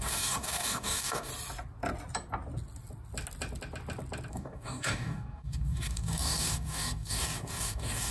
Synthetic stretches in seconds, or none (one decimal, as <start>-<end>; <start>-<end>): 0.0-1.3; 4.3-8.1